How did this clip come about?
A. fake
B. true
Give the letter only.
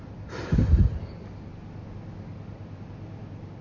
B